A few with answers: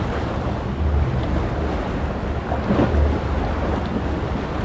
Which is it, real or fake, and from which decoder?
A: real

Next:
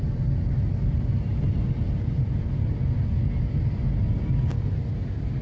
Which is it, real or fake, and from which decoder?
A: real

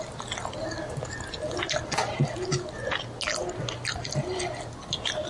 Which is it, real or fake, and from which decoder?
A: real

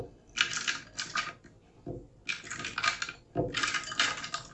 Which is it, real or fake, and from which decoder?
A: real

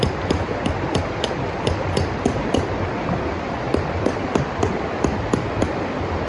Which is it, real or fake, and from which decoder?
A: fake, vocoder, BigVGAN v2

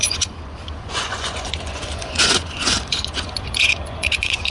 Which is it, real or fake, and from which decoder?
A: fake, vocoder, Vocos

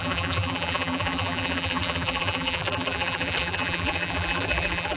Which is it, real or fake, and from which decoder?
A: fake, vocoder, BigVGAN v2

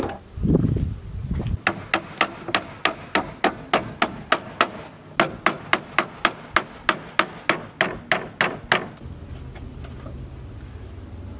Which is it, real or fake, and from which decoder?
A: real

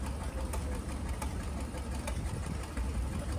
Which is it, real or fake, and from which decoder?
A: real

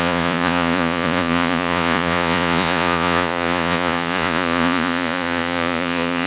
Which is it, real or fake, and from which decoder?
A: fake, vocoder, Vocos